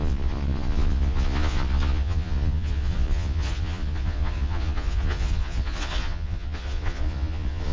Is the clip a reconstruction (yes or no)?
yes